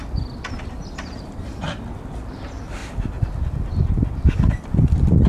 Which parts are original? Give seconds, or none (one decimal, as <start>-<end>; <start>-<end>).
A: 0.0-5.3